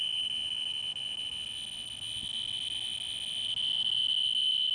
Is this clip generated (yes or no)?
no